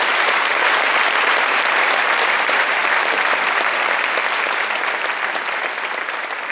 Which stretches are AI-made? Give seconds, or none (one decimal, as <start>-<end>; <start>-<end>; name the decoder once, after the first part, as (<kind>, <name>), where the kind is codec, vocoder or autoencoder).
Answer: 0.0-2.8 (vocoder, BigVGAN v2)